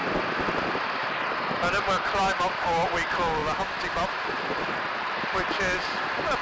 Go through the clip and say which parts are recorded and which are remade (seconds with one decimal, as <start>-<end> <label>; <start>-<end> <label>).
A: 0.0-6.4 recorded